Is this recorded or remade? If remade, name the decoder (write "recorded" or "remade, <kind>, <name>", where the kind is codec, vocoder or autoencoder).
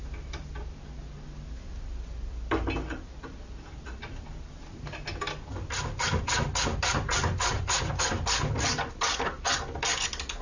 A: recorded